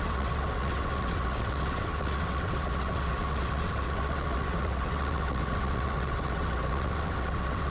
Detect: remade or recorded remade